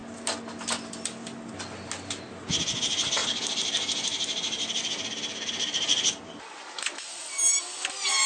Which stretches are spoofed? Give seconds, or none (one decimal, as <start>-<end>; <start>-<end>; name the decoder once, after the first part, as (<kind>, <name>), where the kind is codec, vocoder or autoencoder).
none